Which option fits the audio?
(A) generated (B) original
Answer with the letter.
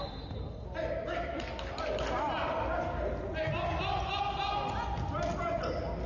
B